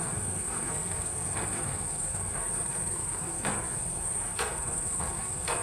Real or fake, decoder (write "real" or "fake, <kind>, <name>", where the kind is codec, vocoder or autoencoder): fake, codec, SNAC